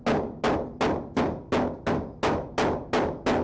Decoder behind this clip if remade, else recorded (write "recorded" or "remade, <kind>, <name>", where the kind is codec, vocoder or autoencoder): recorded